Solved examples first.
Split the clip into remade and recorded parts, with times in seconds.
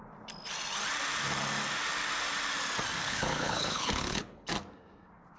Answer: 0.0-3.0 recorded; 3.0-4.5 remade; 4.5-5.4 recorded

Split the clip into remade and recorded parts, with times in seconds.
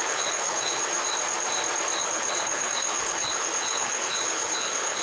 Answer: 0.0-0.9 remade; 0.9-2.0 recorded; 2.0-5.0 remade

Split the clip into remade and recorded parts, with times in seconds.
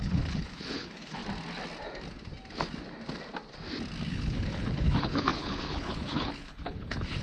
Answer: 0.0-1.2 remade; 1.2-4.1 recorded; 4.1-7.2 remade